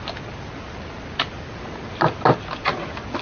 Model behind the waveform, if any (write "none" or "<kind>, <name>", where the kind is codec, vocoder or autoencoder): none